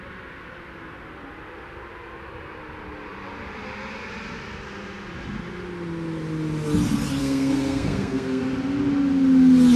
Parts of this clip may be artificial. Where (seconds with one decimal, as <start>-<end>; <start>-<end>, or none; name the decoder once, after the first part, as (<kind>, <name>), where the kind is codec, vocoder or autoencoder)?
7.2-8.4 (codec, SNAC)